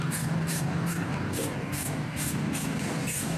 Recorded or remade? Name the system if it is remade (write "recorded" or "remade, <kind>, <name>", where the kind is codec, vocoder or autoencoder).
remade, codec, DAC